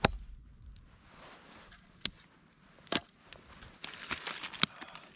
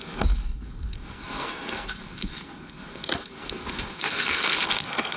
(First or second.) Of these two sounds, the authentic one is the first